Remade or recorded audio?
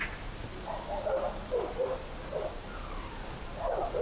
recorded